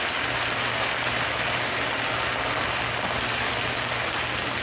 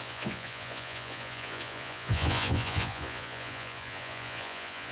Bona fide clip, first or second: first